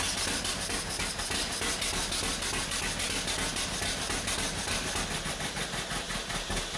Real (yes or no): yes